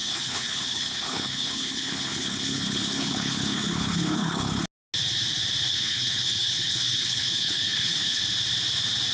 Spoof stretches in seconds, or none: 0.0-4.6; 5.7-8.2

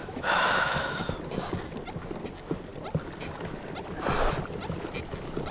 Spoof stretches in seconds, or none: 0.0-1.1

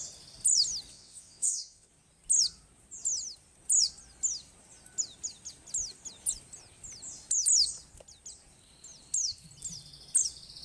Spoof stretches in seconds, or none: 0.9-1.9

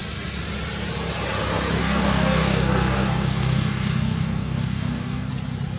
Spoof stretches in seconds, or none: 1.8-5.3

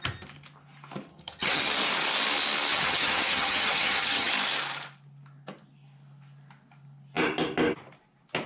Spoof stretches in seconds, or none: 1.1-1.6; 2.7-4.3